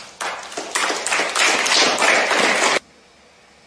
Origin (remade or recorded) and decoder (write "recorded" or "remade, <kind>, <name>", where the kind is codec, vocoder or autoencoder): recorded